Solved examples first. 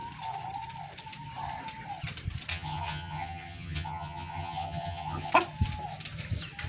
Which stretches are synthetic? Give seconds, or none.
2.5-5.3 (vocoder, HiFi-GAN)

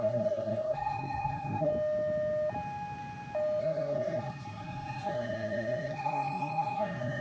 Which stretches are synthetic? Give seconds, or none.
0.0-1.7 (codec, SNAC); 3.6-7.2

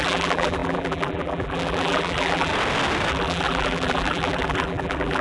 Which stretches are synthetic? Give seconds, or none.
0.0-2.5 (vocoder, BigVGAN v2); 3.1-5.2

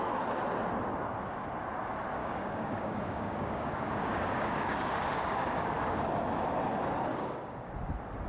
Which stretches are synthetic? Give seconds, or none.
2.2-6.0 (codec, DAC); 7.1-7.7

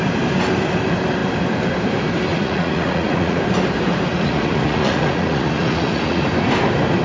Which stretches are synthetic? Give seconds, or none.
2.3-3.4 (vocoder, Vocos); 4.1-6.2